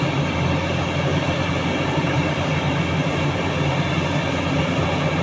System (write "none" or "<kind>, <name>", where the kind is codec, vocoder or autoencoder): none